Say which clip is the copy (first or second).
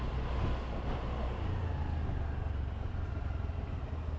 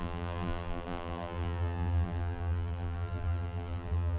second